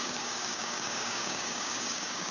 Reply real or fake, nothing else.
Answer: fake